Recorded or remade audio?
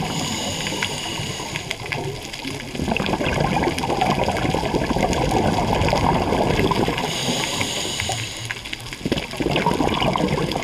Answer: recorded